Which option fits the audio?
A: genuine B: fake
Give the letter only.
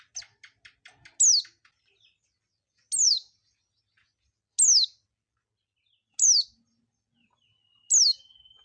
A